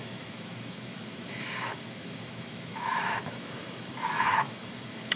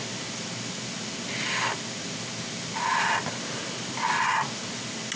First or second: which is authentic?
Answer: second